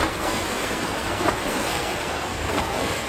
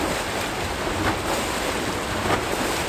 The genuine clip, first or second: second